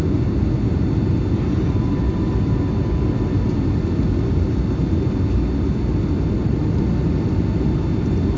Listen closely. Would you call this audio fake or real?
real